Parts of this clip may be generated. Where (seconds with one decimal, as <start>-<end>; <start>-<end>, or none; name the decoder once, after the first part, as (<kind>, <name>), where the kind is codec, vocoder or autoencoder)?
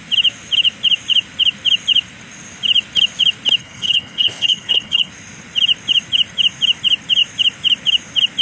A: 3.6-5.1 (codec, HILCodec)